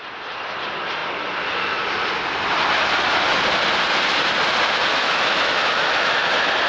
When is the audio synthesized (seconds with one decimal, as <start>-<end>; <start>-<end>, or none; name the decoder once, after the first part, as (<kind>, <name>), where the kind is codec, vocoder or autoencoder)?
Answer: 4.9-6.2 (autoencoder, DAC-VAE)

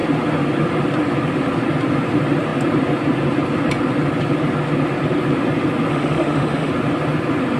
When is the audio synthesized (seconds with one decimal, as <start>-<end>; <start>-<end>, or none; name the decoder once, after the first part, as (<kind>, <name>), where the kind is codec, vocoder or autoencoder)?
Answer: 5.9-6.7 (autoencoder, DAC-VAE)

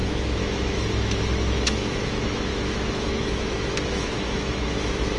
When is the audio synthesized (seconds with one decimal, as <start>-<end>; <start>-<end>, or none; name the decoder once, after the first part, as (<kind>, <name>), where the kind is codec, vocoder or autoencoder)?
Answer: 0.0-5.2 (autoencoder, DAC-VAE)

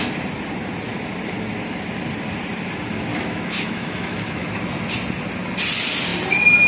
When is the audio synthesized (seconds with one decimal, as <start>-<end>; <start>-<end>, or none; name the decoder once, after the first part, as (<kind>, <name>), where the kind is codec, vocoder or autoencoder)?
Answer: 3.1-4.5 (autoencoder, DAC-VAE)

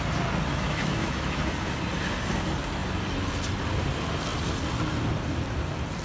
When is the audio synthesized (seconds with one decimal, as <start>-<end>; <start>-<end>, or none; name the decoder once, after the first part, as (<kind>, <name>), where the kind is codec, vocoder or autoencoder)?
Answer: 0.5-1.4 (autoencoder, DAC-VAE)

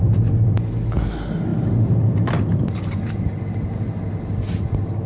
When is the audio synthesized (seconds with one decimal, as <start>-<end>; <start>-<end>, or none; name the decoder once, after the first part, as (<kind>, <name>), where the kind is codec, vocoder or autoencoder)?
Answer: none